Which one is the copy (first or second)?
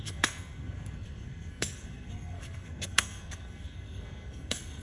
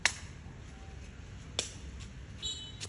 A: first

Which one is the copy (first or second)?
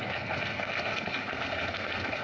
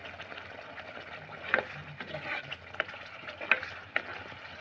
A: first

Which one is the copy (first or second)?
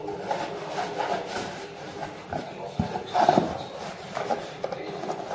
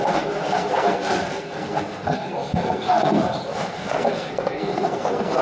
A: second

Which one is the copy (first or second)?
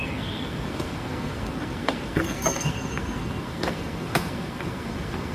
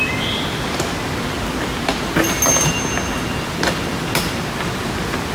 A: first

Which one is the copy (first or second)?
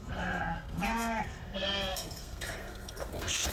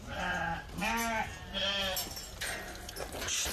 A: first